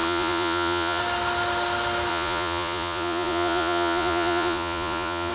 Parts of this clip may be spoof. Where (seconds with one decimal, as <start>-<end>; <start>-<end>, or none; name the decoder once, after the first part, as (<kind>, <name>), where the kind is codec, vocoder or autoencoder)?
0.0-1.0 (vocoder, Vocos); 2.1-5.3